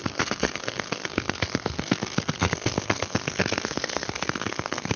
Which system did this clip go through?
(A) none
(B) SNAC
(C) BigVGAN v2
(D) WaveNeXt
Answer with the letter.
B